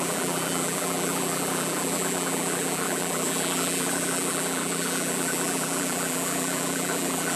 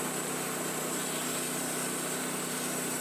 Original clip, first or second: second